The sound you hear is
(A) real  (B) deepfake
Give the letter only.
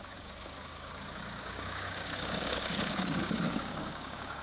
B